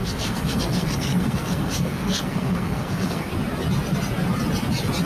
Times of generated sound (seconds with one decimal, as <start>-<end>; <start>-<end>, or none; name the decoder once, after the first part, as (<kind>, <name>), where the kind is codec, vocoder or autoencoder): 0.0-3.3 (codec, SNAC)